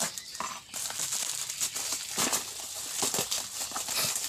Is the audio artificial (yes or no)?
no